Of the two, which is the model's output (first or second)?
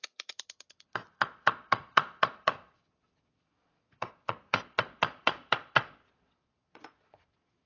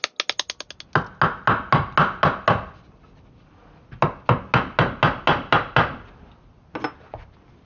first